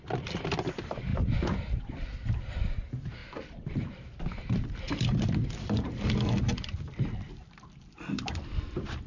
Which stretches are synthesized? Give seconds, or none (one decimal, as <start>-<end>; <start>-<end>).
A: 0.0-1.1; 1.9-9.1